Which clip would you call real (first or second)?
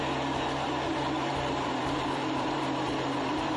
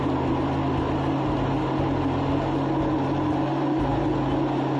second